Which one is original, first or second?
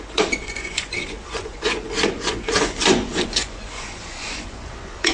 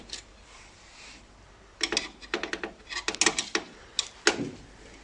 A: second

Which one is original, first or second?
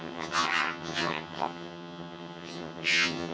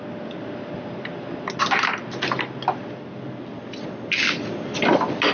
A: second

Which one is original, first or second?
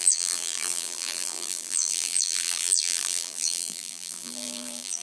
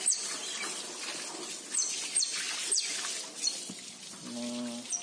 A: second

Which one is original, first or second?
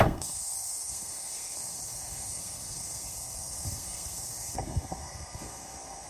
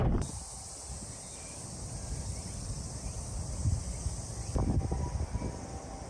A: second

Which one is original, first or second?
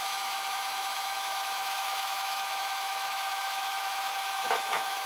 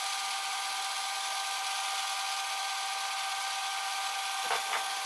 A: second